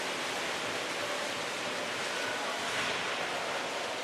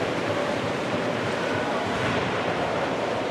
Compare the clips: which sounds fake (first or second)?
second